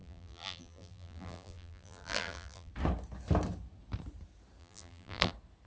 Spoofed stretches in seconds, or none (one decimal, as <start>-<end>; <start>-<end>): 0.0-2.7; 4.6-5.3